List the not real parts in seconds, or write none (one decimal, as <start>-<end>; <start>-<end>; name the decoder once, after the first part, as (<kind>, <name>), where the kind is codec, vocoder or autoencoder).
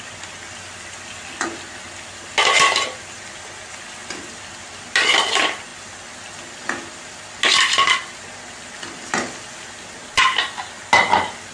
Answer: none